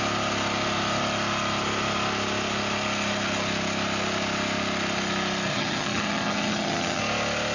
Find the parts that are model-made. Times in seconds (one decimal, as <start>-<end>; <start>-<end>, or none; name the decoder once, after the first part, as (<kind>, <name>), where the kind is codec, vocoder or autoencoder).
5.5-7.0 (vocoder, HiFi-GAN)